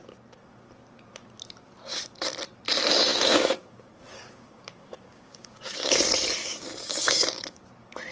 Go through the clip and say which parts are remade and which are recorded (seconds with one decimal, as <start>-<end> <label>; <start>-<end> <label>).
0.0-3.1 recorded; 3.1-6.0 remade; 6.0-6.4 recorded; 6.4-7.6 remade; 7.6-8.1 recorded